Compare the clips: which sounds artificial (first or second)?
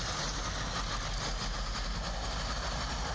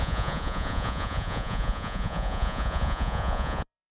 second